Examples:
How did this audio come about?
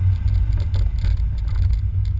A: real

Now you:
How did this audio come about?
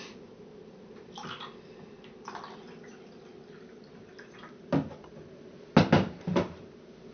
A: real